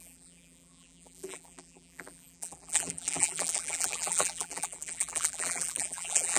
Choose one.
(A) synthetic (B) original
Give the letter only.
A